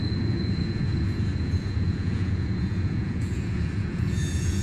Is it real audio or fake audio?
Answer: fake